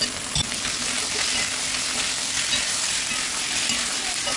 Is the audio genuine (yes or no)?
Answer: yes